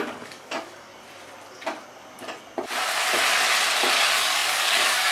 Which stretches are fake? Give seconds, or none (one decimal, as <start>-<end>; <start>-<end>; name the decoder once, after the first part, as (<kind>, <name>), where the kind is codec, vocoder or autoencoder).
0.0-0.9 (codec, DAC); 4.0-5.1